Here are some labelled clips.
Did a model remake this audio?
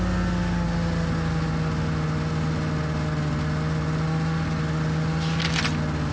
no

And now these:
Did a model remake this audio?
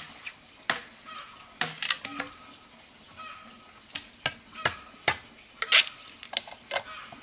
no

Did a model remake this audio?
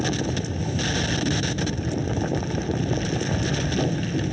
no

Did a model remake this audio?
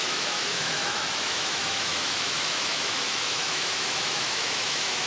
yes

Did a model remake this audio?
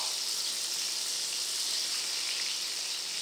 no